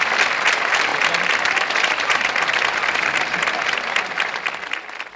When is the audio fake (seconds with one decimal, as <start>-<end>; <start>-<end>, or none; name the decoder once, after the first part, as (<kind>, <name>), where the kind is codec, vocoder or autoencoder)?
0.9-4.0 (vocoder, BigVGAN v2)